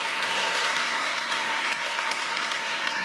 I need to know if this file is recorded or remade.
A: remade